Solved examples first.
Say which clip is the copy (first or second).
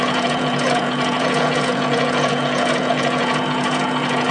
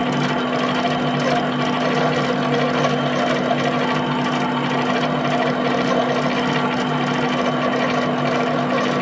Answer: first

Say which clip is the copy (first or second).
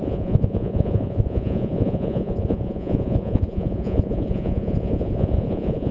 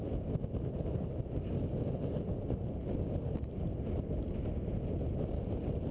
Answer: first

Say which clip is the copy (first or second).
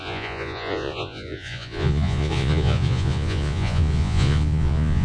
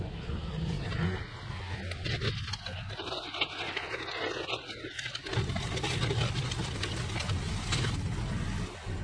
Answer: first